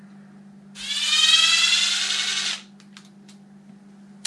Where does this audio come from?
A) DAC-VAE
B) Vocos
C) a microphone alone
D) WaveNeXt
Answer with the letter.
C